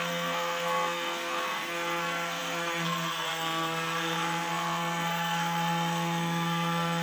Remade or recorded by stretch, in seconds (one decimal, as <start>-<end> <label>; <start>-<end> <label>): 0.0-7.0 remade